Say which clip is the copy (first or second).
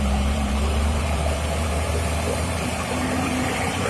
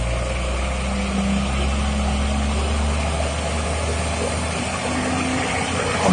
first